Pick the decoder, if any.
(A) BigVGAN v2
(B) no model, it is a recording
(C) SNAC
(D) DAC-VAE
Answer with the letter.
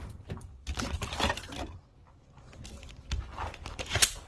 B